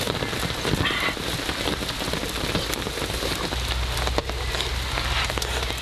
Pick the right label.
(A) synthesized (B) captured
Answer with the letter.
B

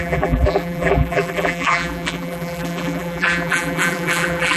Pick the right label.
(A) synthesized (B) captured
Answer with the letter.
A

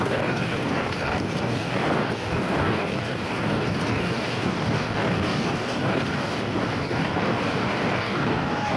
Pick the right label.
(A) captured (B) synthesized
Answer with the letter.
B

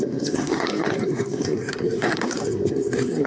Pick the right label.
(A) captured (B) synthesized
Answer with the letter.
B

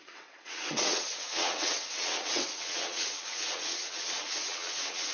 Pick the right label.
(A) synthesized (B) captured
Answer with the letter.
A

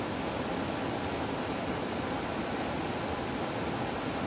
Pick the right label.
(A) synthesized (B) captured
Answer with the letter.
B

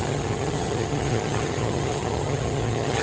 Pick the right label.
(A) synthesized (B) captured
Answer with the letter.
A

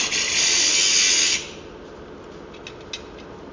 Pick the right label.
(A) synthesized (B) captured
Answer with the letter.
B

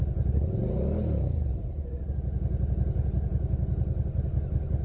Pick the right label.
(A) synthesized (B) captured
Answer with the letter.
B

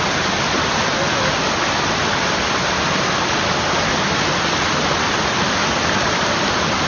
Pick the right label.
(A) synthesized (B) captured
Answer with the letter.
B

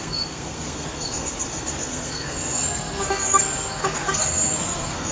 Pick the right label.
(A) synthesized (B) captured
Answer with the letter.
A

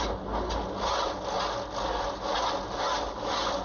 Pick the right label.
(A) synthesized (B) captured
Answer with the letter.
B